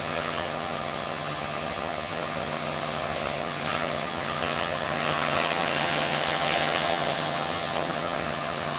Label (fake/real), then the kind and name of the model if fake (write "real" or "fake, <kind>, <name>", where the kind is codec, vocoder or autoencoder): fake, vocoder, HiFi-GAN